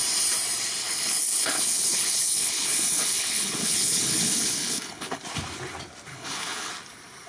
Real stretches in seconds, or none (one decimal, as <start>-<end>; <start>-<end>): 0.0-0.8; 5.2-6.1; 6.7-7.3